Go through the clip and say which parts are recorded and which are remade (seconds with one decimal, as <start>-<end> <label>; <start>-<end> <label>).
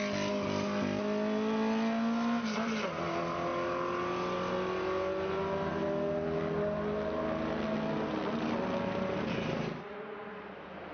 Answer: 0.0-10.9 recorded